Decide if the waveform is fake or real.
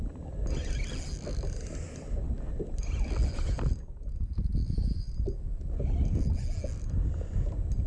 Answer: real